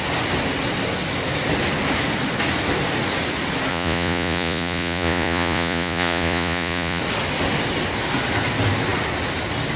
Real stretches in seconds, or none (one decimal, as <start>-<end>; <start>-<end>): 0.0-3.7; 7.0-9.8